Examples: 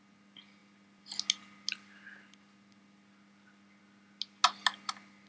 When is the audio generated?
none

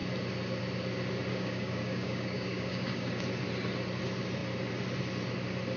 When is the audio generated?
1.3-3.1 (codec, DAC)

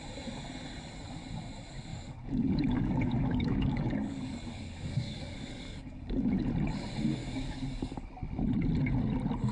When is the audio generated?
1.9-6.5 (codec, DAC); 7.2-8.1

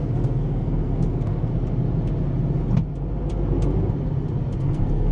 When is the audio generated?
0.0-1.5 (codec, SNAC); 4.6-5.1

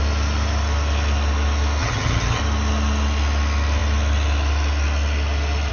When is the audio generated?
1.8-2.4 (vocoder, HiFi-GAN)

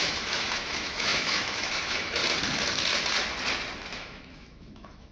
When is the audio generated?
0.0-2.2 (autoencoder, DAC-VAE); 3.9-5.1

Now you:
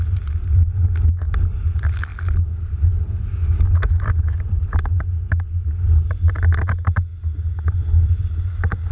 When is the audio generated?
none